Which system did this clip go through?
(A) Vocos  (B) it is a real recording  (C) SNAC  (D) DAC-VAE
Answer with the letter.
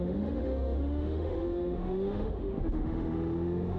D